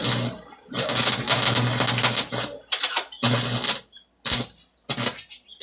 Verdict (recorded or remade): recorded